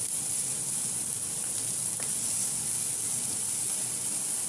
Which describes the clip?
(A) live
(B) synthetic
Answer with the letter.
A